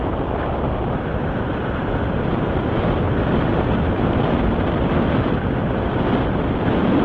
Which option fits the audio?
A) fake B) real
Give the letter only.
B